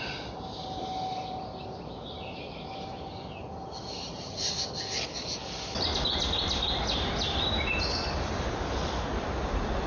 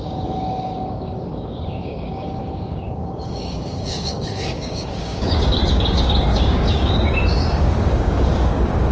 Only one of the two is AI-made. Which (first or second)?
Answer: second